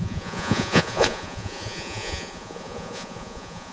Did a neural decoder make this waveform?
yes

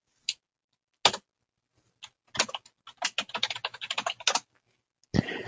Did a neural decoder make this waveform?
no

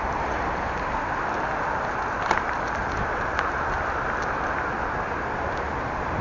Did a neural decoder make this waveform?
no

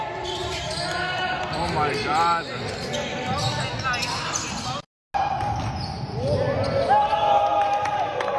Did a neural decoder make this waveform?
no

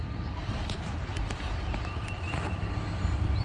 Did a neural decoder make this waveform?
yes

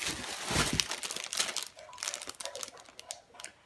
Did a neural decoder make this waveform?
no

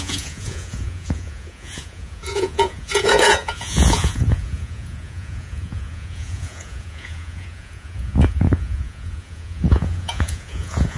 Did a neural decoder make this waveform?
yes